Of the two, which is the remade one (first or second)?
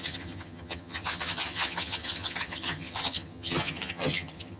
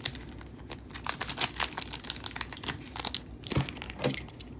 first